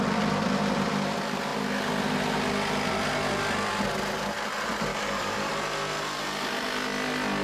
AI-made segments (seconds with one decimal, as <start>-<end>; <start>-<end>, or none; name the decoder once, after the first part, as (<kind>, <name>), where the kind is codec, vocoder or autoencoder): 4.9-5.5 (codec, DAC)